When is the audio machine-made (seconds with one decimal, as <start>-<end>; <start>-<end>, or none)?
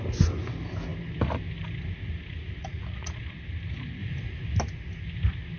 2.6-3.2